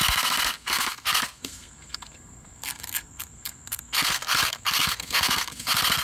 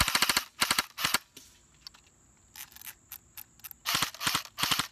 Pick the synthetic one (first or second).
first